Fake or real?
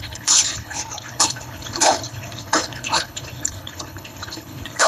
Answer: fake